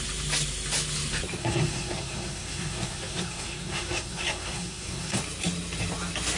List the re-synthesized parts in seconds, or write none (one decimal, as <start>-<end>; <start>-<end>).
1.4-5.2